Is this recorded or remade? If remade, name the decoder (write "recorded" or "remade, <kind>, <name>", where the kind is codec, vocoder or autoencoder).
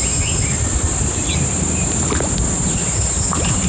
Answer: recorded